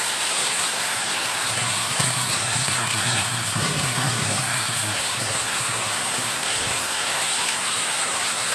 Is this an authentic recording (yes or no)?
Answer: no